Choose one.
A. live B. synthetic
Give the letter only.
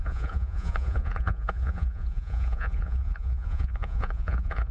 B